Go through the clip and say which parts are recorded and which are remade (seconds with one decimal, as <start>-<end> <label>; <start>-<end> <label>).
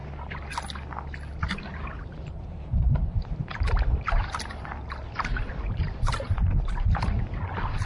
0.0-1.7 recorded; 1.7-4.6 remade; 4.6-5.3 recorded; 5.3-7.1 remade; 7.1-7.9 recorded